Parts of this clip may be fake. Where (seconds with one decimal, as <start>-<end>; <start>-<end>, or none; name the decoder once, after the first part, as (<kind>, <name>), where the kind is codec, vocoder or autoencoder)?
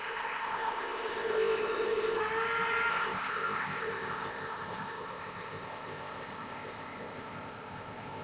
0.0-2.2 (codec, ZipCodec); 2.9-8.2